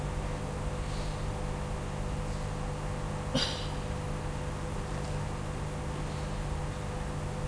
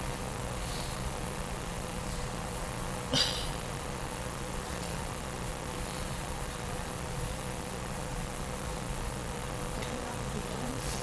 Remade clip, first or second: second